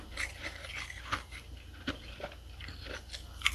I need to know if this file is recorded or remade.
recorded